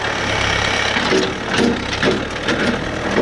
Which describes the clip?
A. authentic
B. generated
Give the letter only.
A